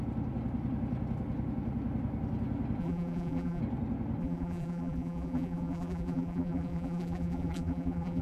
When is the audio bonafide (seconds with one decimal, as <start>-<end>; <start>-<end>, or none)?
0.0-2.8; 3.6-4.2